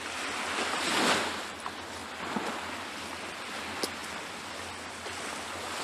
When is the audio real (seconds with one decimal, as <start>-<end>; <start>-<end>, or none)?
0.0-5.8